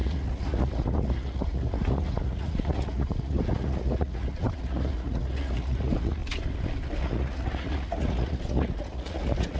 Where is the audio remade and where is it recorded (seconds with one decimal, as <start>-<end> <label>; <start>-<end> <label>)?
0.0-6.2 remade; 6.2-7.0 recorded; 7.0-9.6 remade